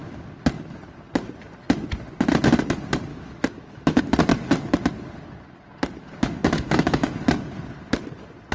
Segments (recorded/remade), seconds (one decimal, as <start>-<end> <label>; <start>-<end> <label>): 0.0-3.1 recorded; 3.1-4.0 remade; 4.0-6.4 recorded; 6.4-7.1 remade; 7.1-8.5 recorded